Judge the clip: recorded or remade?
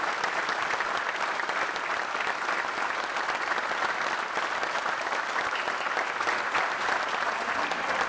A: recorded